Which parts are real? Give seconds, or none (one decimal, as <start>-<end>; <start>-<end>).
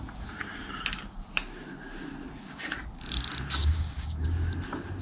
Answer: 0.0-3.6; 4.3-5.0